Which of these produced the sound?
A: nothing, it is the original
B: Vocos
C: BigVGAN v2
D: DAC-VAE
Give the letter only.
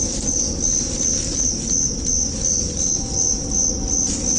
A